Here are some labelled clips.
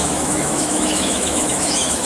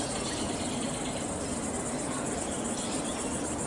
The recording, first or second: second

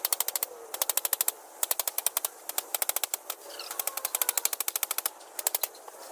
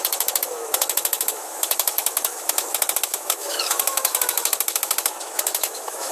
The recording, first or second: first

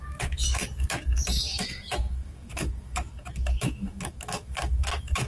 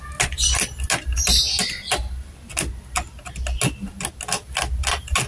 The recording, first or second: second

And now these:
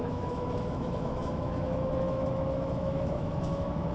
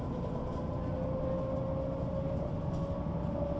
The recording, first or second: second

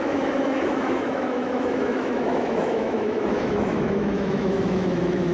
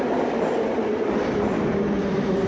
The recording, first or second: second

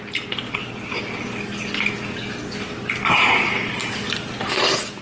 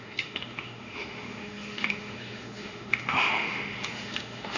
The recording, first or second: first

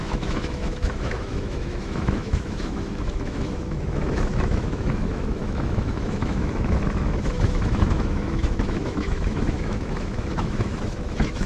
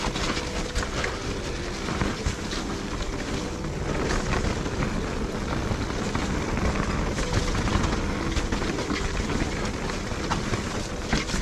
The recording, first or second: second